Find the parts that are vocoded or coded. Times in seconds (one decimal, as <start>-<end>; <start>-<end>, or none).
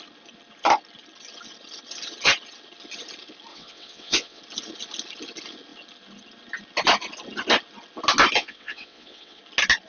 3.5-4.4; 8.4-9.4